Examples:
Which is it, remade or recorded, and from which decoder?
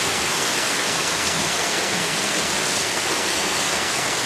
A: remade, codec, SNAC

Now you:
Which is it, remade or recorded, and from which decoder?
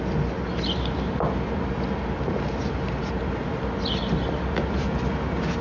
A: recorded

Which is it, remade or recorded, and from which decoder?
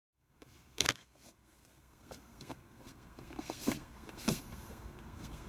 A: remade, codec, SNAC